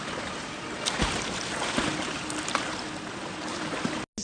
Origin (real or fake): real